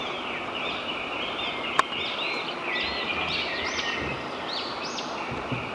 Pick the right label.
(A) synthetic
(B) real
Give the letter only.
B